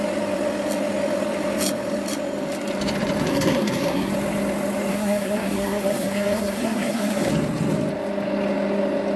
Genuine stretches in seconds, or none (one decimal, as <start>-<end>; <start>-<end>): 0.0-3.3; 4.1-4.9; 7.3-9.2